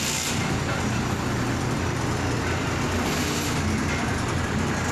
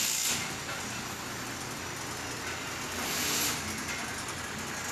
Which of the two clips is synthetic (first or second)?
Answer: first